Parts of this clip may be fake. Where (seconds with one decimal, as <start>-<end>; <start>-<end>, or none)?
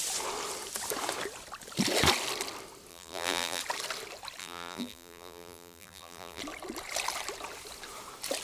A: 2.9-3.6; 4.4-6.4